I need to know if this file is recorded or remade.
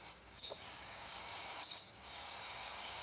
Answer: remade